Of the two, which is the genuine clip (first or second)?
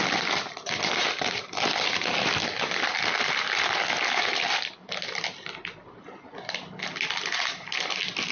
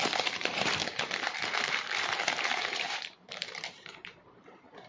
first